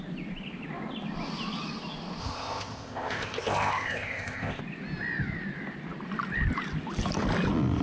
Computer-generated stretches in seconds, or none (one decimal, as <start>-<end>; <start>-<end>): 2.2-4.6